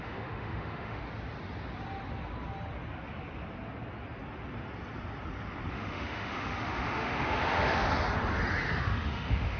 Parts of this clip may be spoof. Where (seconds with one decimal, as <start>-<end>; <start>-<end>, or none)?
0.0-1.0; 5.7-7.9; 8.8-9.6